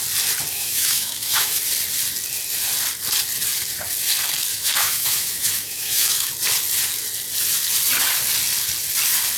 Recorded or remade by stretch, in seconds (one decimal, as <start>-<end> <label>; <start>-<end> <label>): 0.0-0.5 recorded; 0.5-1.6 remade; 1.6-4.5 recorded; 4.5-6.3 remade; 6.3-9.4 recorded